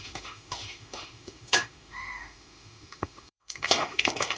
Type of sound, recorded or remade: remade